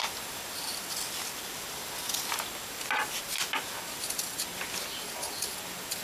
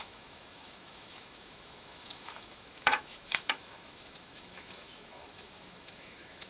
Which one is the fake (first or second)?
second